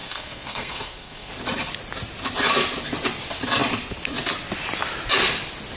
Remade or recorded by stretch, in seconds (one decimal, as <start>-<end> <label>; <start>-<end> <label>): 0.0-1.3 remade; 1.3-5.8 recorded